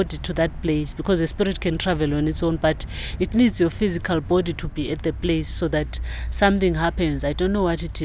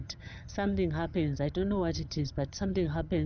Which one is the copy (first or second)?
second